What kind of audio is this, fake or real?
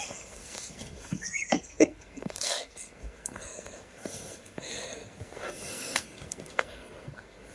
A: fake